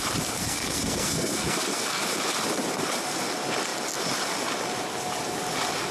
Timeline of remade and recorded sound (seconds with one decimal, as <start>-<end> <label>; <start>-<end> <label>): 0.0-0.4 recorded; 0.4-2.0 remade; 2.0-5.9 recorded